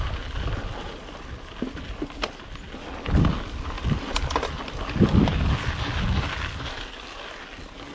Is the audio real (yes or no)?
yes